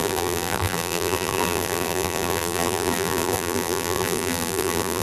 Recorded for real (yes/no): no